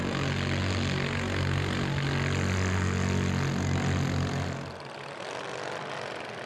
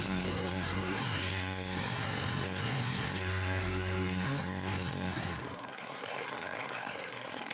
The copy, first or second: second